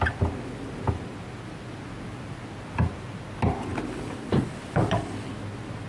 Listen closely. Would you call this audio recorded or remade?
recorded